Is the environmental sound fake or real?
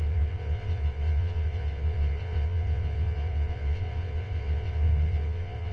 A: fake